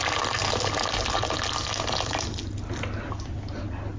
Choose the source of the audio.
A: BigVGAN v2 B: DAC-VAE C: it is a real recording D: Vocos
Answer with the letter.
C